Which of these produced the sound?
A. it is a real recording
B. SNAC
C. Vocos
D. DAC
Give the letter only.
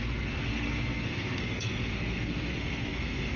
B